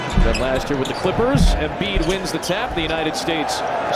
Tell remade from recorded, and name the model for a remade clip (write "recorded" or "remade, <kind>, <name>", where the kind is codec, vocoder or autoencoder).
recorded